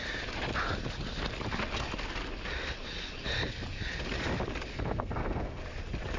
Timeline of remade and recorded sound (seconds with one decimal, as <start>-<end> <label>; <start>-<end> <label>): 0.0-4.7 recorded; 4.7-5.6 remade; 5.6-6.2 recorded